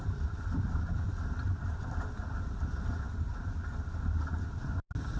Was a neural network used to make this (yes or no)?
no